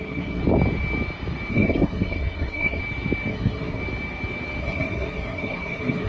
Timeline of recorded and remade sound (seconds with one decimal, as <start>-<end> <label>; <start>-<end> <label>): 0.0-0.4 remade; 0.4-1.5 recorded; 1.5-2.8 remade; 2.8-3.3 recorded; 3.3-3.8 remade; 3.8-4.6 recorded; 4.6-6.1 remade